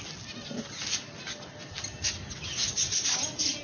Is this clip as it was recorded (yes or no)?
yes